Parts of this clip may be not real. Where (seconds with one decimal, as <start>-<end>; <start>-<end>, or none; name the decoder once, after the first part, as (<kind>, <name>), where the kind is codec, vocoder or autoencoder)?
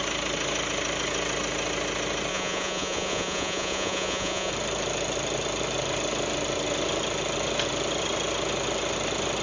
2.3-4.5 (vocoder, Vocos)